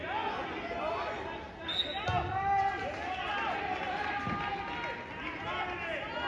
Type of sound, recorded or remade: recorded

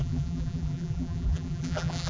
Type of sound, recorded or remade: remade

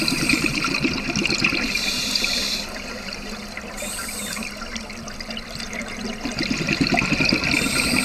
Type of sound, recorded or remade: recorded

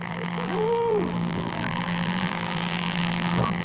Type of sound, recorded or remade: remade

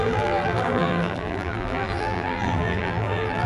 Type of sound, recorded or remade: remade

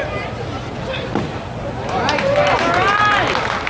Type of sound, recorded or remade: recorded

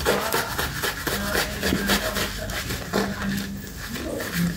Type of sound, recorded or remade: recorded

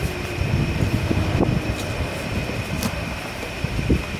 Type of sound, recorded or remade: remade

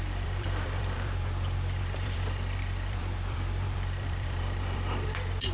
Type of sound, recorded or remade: remade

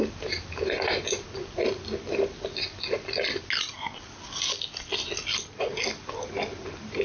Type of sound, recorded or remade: recorded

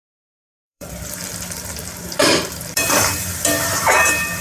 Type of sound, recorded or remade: remade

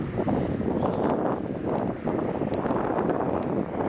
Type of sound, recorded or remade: recorded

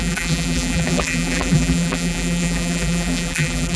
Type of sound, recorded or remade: remade